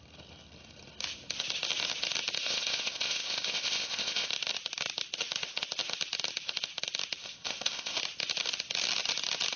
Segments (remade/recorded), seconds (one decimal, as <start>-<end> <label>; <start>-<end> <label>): 0.0-2.4 recorded; 2.4-4.3 remade; 4.3-7.2 recorded; 7.2-8.0 remade; 8.0-9.6 recorded